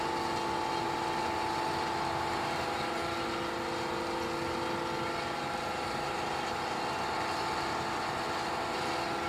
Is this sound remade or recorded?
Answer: recorded